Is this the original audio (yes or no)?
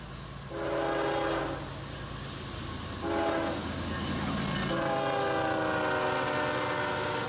yes